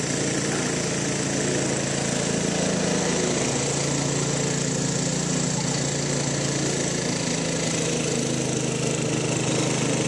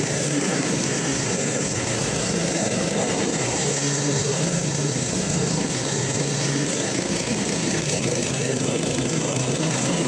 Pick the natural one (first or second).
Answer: first